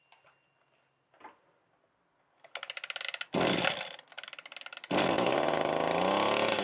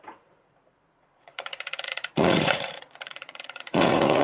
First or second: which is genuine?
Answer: first